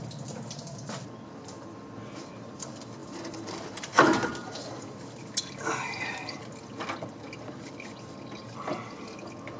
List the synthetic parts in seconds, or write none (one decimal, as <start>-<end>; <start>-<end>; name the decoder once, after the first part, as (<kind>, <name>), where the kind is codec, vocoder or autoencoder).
3.0-4.8 (vocoder, BigVGAN v2)